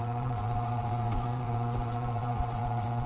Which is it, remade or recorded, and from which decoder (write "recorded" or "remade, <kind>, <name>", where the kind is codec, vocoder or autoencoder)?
remade, vocoder, Vocos